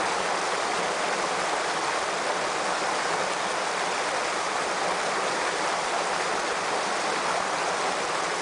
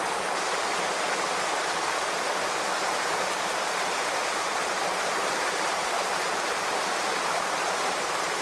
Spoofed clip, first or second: second